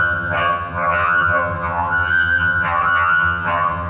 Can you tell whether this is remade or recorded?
remade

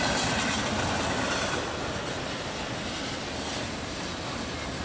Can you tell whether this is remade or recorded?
recorded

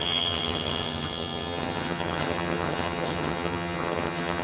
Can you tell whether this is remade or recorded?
remade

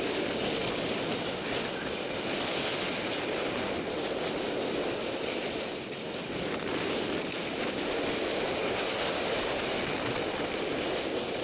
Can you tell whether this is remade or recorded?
recorded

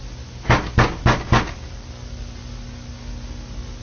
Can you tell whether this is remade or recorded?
recorded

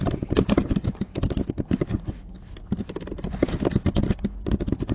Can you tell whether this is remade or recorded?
recorded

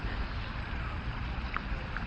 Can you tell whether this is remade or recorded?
recorded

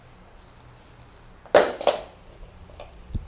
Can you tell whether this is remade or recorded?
recorded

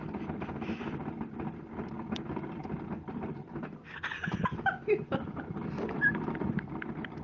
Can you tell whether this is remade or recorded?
recorded